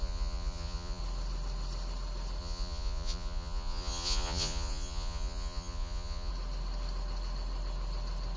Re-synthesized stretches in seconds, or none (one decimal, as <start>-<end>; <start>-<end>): 0.0-1.0; 2.4-6.3